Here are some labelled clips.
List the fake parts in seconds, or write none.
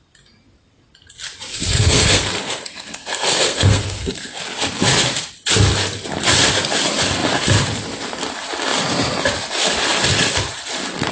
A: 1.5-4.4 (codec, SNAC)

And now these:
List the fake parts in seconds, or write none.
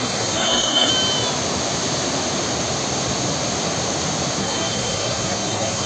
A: 0.0-0.9 (codec, SNAC); 4.4-5.9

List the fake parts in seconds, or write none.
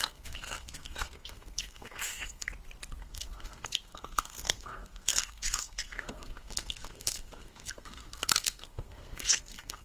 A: 0.0-2.5 (codec, SNAC); 3.0-9.8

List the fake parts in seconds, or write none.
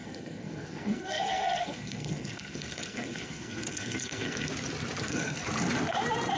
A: 0.0-4.5 (codec, SNAC); 5.0-5.4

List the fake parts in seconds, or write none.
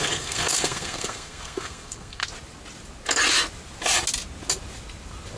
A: 0.0-2.2 (codec, SNAC)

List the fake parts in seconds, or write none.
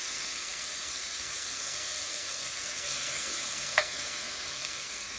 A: 0.0-5.2 (codec, SNAC)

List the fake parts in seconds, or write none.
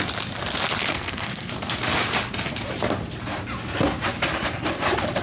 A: 0.9-1.5 (codec, SNAC)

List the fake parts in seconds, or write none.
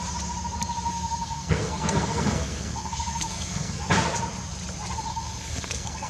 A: 0.9-3.9 (codec, SNAC); 5.1-6.1